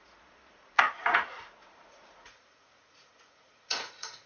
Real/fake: fake